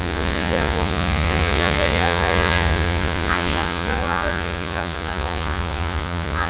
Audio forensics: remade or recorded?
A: remade